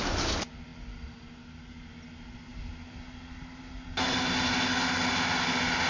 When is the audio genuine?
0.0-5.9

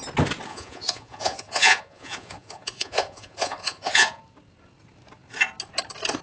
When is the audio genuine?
0.0-0.5; 4.2-6.2

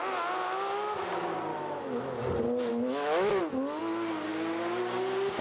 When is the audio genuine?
0.0-1.5; 2.2-2.7; 3.4-5.4